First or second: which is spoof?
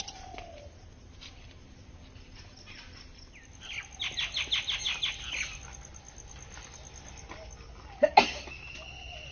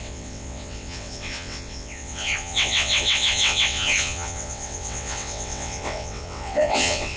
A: second